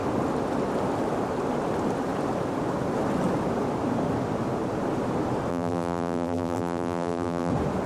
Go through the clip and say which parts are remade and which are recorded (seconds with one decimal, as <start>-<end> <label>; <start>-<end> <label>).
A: 0.0-5.5 recorded; 5.5-7.5 remade; 7.5-7.9 recorded